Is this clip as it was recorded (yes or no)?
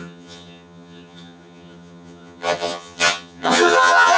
no